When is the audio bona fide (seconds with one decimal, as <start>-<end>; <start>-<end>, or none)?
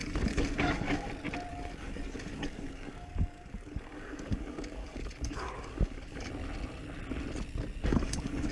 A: 1.1-1.5; 6.3-7.9